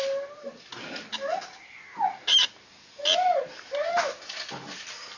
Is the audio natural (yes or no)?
yes